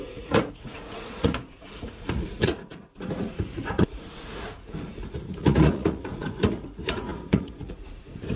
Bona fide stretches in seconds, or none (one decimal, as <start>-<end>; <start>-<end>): none